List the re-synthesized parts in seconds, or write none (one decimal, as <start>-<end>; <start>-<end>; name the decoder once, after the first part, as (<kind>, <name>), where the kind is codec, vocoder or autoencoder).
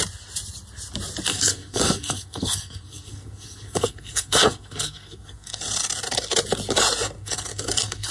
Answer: 1.3-5.6 (codec, SNAC); 7.2-8.1